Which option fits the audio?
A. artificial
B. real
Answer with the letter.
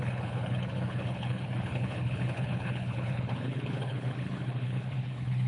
A